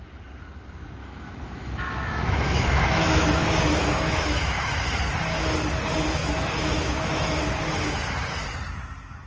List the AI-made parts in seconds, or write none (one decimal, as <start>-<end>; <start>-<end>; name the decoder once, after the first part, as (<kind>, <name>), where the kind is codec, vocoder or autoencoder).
1.0-4.7 (autoencoder, DAC-VAE); 6.2-7.4